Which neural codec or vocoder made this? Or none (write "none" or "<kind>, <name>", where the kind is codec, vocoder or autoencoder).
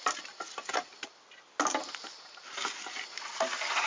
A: none